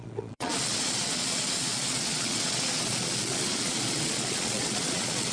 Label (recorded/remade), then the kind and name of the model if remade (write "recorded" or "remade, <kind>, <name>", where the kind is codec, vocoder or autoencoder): remade, vocoder, Vocos